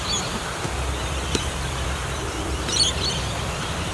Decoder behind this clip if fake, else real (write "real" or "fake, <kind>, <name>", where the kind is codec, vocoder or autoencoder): fake, vocoder, BigVGAN v2